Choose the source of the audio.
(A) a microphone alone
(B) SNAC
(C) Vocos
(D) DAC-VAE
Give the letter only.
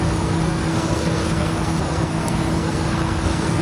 B